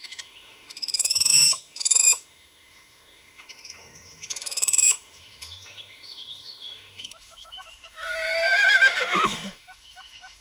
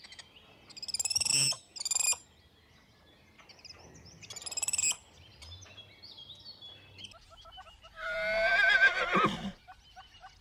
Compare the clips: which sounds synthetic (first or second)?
first